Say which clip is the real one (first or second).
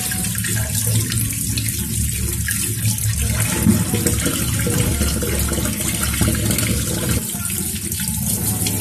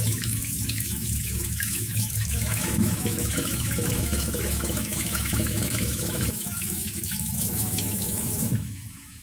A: first